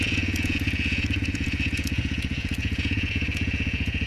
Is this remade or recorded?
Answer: remade